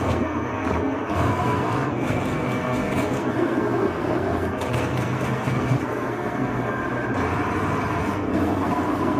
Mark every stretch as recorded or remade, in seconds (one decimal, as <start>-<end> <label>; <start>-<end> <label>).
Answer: 0.0-6.8 remade; 6.8-8.0 recorded; 8.0-9.2 remade